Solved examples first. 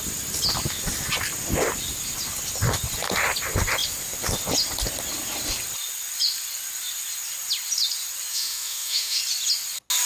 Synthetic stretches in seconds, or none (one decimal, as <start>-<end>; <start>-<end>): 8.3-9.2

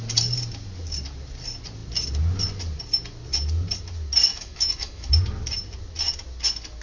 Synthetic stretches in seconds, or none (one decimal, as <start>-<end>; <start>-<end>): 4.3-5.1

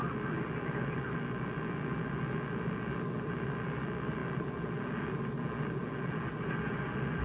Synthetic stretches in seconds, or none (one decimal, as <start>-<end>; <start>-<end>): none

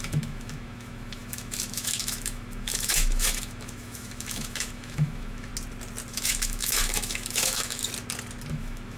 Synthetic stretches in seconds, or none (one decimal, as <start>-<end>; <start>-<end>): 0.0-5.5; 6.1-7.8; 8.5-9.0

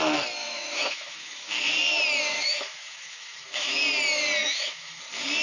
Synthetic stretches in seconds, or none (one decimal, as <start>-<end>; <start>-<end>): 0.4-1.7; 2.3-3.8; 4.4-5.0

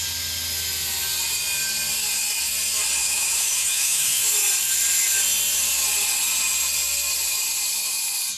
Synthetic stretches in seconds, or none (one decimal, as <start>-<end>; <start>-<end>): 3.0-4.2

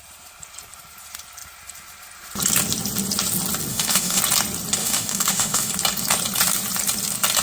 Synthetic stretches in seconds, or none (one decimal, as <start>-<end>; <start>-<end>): 3.7-4.2; 4.8-5.7

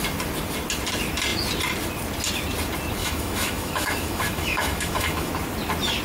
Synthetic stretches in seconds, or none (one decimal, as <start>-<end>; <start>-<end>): 3.0-5.3